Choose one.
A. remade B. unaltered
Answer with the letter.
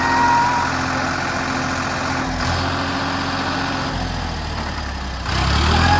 B